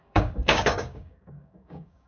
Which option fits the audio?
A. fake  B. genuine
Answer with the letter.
A